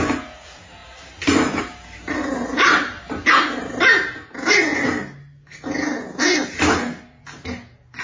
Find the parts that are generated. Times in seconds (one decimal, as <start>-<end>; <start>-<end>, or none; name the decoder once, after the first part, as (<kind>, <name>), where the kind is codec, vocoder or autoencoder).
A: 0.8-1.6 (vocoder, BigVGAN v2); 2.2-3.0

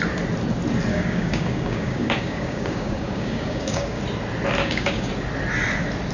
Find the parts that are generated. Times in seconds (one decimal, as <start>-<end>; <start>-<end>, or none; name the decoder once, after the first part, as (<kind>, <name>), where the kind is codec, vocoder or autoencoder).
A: 0.9-4.0 (codec, DAC); 4.6-5.1

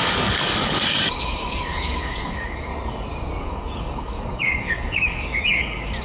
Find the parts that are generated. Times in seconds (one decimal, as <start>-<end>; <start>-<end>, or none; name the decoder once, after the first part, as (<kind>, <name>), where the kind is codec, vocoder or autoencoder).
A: 0.0-2.7 (codec, DAC); 3.4-6.0

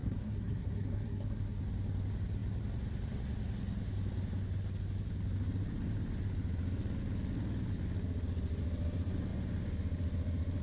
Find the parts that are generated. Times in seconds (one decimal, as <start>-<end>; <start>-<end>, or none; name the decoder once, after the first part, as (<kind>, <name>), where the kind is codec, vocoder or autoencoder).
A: 0.0-1.6 (codec, SNAC)

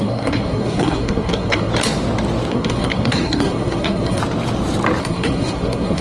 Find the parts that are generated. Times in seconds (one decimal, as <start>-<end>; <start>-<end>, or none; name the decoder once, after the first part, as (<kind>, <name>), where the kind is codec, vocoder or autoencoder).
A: 0.0-1.7 (codec, SNAC); 2.5-4.2; 5.0-6.0